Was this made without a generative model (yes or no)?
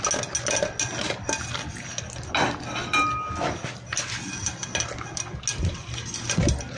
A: yes